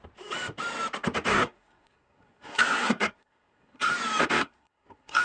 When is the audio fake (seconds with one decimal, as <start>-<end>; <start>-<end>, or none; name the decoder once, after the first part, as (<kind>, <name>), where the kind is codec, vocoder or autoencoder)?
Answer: 1.3-3.9 (codec, SNAC); 4.4-5.2